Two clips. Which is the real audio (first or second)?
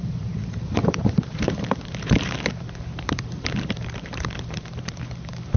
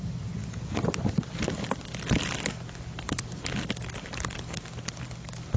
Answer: second